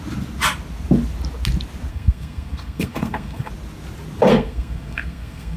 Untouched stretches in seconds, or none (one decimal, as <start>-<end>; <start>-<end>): 0.0-1.9; 3.5-4.3